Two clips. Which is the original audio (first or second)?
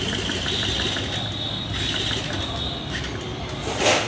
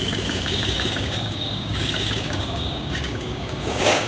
first